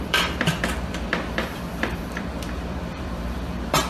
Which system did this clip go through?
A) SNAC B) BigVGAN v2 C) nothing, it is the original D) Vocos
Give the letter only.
B